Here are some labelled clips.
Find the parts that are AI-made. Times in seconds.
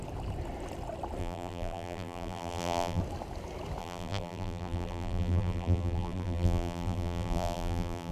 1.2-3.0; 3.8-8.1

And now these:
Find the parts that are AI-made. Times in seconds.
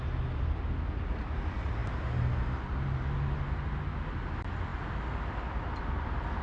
1.8-3.1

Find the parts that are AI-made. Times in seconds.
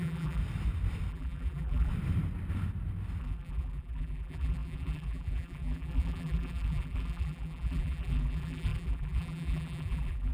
0.0-0.4; 1.1-1.9; 3.2-10.3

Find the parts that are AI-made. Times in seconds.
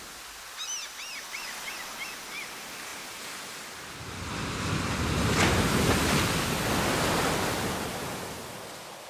none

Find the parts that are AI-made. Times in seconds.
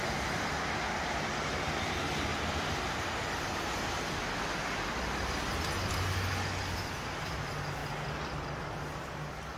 none